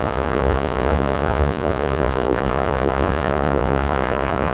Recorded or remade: remade